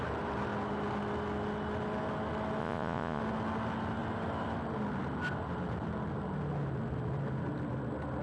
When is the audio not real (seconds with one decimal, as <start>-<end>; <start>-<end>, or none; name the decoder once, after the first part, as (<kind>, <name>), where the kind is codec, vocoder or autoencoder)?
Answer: 2.6-3.2 (vocoder, Vocos)